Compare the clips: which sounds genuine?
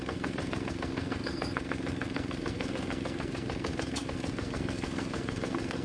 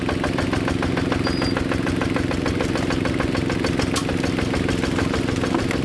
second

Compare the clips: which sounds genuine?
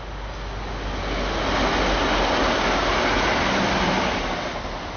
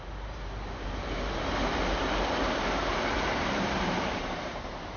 first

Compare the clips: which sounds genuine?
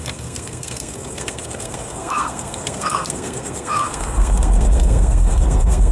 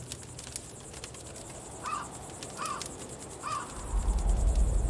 second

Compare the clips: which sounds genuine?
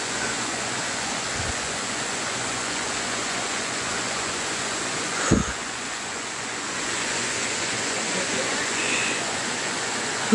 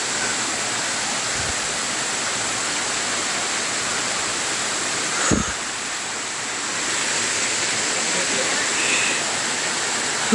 second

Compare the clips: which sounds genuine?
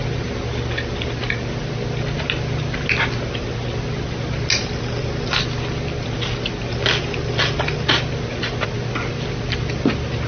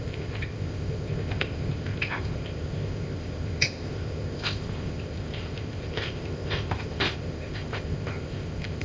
first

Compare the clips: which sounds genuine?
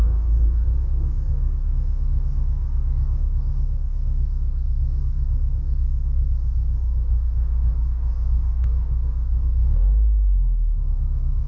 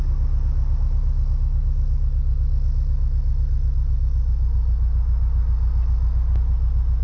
second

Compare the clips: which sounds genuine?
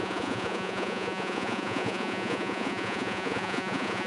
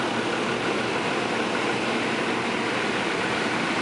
second